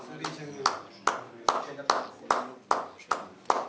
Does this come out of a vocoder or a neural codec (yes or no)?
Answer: no